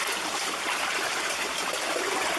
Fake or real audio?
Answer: real